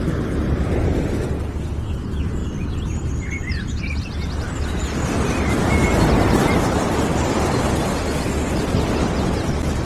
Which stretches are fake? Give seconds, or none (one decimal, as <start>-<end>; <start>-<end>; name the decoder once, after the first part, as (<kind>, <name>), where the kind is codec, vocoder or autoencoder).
2.4-4.0 (vocoder, BigVGAN v2)